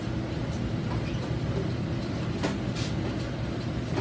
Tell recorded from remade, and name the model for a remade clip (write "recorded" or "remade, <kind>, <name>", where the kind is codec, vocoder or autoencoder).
recorded